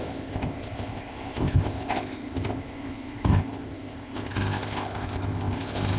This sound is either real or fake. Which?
fake